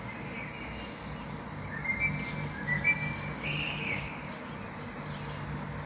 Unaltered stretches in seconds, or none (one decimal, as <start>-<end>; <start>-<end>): 0.0-3.0; 4.0-5.9